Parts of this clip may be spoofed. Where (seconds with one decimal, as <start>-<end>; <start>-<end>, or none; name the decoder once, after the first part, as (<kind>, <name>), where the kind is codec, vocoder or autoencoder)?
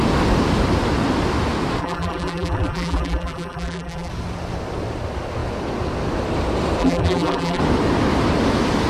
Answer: 1.8-4.1 (vocoder, BigVGAN v2); 6.8-7.6